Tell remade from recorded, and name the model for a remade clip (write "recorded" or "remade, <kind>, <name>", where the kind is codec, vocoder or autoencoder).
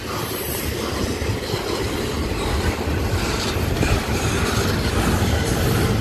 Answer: recorded